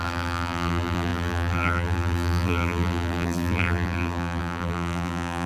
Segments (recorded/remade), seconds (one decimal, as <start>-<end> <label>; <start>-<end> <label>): 0.0-5.5 remade